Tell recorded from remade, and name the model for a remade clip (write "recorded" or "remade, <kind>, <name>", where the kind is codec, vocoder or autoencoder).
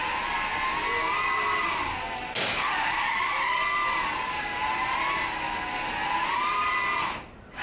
recorded